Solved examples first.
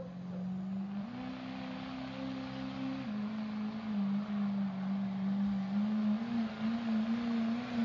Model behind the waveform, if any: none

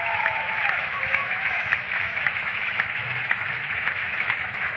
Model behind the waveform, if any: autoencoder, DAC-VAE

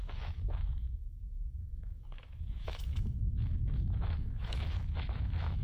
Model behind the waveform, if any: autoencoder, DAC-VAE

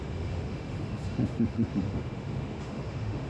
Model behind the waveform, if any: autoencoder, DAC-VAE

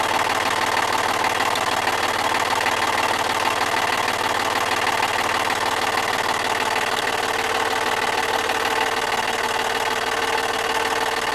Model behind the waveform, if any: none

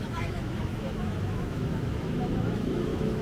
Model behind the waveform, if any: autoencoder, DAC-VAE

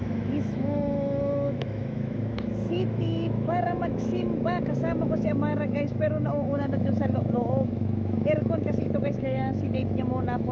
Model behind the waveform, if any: autoencoder, DAC-VAE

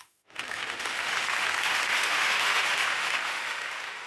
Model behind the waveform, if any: autoencoder, DAC-VAE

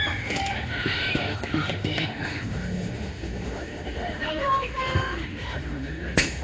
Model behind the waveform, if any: autoencoder, DAC-VAE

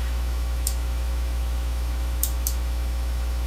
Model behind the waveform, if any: autoencoder, DAC-VAE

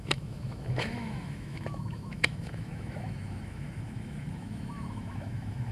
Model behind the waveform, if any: autoencoder, DAC-VAE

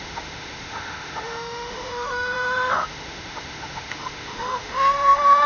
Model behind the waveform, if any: autoencoder, DAC-VAE